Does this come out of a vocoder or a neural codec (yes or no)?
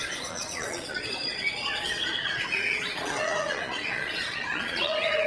yes